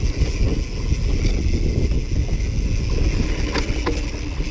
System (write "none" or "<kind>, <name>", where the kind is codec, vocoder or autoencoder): none